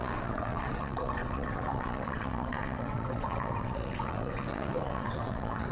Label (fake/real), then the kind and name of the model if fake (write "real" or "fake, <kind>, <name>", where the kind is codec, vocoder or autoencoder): fake, vocoder, WaveNeXt